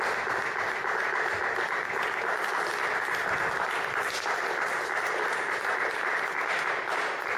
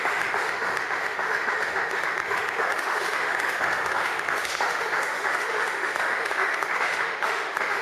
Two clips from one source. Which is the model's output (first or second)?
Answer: second